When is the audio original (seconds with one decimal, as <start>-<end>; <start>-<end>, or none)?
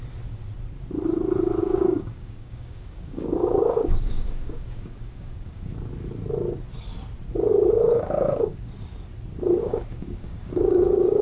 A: 0.0-1.6; 5.7-7.5; 8.7-9.6